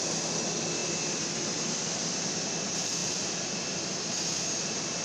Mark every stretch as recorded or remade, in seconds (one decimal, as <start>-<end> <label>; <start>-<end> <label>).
0.0-5.0 recorded

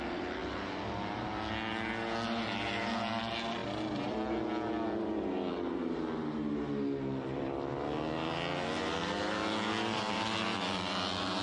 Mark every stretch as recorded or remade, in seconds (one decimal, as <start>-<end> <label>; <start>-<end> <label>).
0.0-11.4 recorded

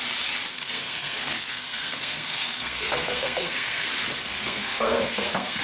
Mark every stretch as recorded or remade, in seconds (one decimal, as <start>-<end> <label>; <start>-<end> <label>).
0.0-0.5 recorded; 0.5-3.9 remade; 3.9-4.3 recorded; 4.3-5.6 remade

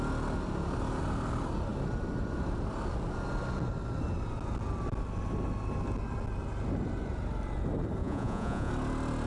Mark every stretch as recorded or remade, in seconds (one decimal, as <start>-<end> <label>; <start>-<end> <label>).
0.0-8.0 recorded; 8.0-8.7 remade; 8.7-9.3 recorded